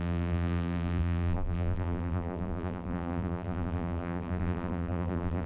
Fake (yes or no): yes